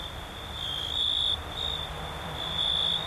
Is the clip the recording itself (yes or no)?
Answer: no